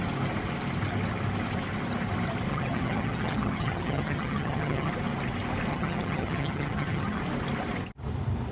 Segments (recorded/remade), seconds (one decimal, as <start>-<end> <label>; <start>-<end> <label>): 0.0-2.5 recorded; 2.5-4.9 remade; 4.9-5.7 recorded; 5.7-7.2 remade; 7.2-8.5 recorded